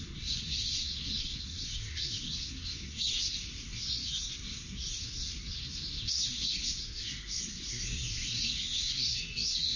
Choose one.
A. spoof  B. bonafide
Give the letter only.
A